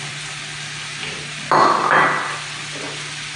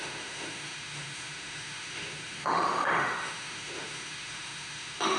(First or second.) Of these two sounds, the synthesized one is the second